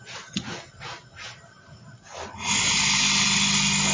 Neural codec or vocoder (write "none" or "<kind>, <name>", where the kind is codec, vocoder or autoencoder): none